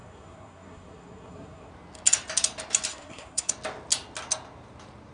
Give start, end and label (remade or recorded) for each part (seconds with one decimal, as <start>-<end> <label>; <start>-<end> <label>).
0.0-1.7 remade; 1.7-2.9 recorded; 2.9-3.5 remade; 3.5-5.1 recorded

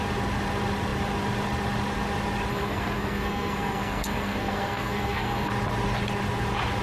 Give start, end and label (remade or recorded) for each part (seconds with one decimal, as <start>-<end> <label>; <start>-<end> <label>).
0.0-2.5 recorded; 2.5-5.5 remade; 5.5-6.8 recorded

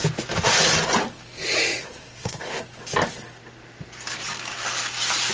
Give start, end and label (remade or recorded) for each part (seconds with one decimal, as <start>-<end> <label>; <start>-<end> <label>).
0.0-1.8 recorded; 1.8-2.6 remade; 2.6-5.3 recorded

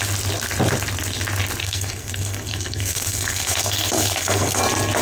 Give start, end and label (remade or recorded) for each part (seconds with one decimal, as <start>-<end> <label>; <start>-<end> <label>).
0.0-1.6 recorded; 1.6-4.6 remade; 4.6-5.0 recorded

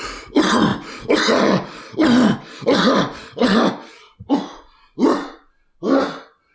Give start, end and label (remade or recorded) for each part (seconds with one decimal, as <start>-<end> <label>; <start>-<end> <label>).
0.0-6.5 recorded

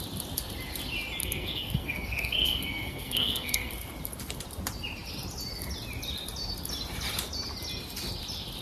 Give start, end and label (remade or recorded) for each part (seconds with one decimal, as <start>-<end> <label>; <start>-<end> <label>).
0.0-1.2 recorded; 1.2-3.7 remade; 3.7-8.6 recorded

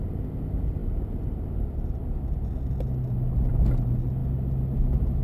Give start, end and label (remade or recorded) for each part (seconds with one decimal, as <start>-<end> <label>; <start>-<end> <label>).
0.0-5.2 recorded